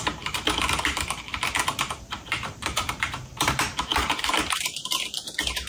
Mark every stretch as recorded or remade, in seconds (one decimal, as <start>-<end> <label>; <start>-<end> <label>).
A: 0.0-1.3 remade; 1.3-1.9 recorded; 1.9-5.7 remade